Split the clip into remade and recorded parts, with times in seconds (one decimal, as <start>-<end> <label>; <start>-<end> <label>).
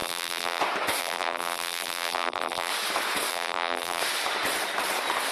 0.0-0.6 remade; 0.6-1.0 recorded; 1.0-2.7 remade; 2.7-3.3 recorded; 3.3-4.0 remade; 4.0-5.3 recorded